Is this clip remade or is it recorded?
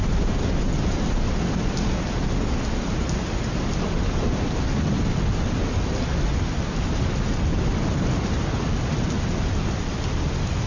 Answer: recorded